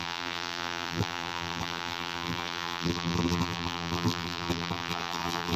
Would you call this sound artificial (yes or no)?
yes